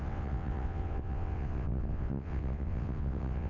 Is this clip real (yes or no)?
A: no